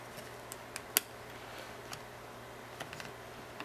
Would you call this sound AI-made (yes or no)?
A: no